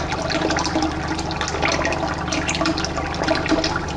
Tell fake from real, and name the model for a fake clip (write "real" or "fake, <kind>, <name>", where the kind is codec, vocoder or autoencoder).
real